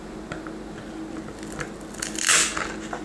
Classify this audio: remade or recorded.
recorded